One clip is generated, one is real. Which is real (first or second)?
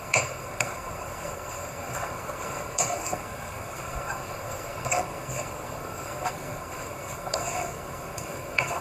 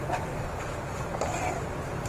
second